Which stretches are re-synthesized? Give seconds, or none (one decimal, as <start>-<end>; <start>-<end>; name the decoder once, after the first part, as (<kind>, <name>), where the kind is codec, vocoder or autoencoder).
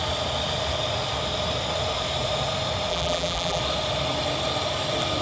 2.9-3.6 (vocoder, BigVGAN v2)